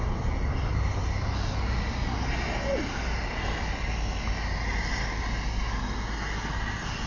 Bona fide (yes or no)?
yes